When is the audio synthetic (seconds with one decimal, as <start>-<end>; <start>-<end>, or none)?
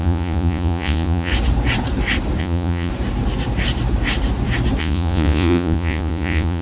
0.0-1.3; 2.4-2.9; 4.8-6.6